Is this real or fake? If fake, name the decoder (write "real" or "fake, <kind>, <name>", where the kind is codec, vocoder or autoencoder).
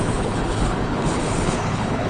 fake, codec, HILCodec